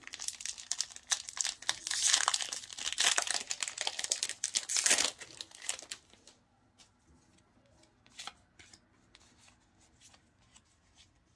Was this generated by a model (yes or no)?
no